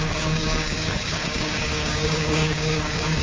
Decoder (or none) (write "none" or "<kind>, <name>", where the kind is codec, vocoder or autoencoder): codec, DAC